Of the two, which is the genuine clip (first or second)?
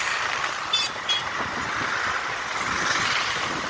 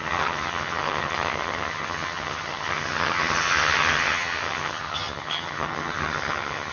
first